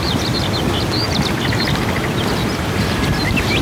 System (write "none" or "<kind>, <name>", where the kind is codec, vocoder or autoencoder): none